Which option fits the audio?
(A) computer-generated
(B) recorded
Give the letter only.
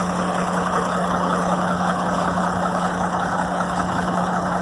A